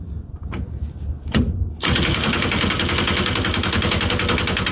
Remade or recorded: recorded